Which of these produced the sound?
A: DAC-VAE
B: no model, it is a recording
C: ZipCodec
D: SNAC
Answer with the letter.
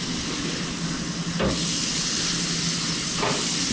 B